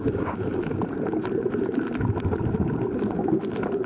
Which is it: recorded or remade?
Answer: recorded